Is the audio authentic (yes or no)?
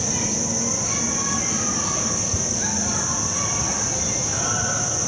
yes